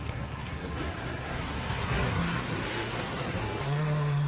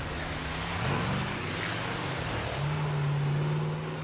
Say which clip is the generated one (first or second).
first